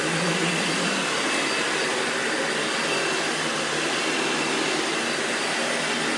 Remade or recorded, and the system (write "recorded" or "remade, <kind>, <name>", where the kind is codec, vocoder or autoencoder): recorded